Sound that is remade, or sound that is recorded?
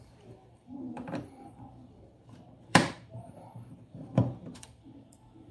remade